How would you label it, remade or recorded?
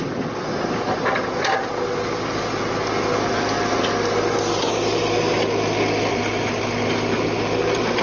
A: recorded